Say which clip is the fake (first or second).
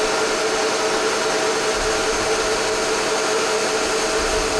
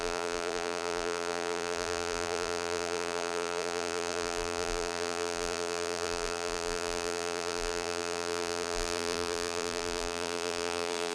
second